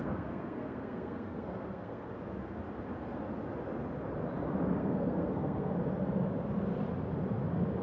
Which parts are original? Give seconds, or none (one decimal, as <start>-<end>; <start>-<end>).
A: 2.1-4.8; 5.7-7.8